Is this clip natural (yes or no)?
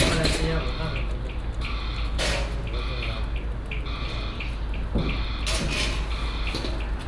yes